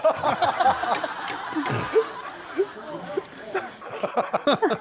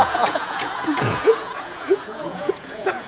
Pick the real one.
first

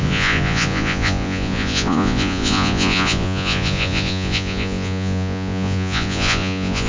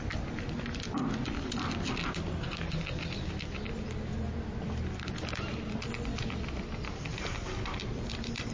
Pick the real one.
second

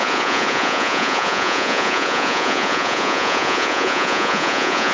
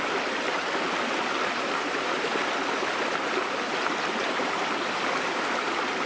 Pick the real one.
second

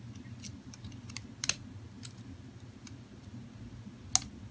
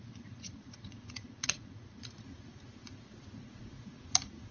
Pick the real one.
first